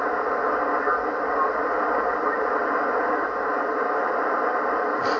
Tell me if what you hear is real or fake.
real